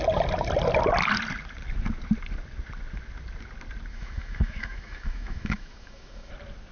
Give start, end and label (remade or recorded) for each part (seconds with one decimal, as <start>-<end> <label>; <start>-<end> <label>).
0.0-3.9 recorded; 3.9-6.3 remade; 6.3-6.7 recorded